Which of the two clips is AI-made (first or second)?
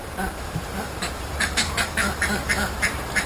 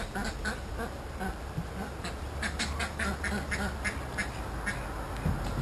first